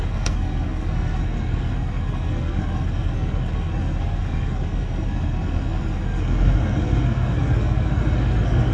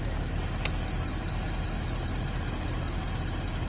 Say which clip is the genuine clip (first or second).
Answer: second